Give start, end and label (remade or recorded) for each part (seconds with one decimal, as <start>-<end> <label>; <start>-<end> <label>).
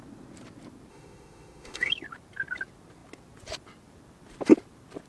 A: 0.0-0.9 recorded; 0.9-1.9 remade; 1.9-5.1 recorded